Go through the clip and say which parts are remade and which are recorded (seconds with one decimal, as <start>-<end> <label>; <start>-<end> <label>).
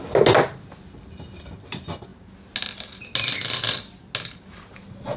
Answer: 0.0-5.2 recorded